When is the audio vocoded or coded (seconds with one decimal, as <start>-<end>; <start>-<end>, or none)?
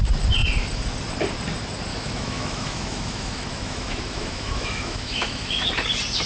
1.9-5.7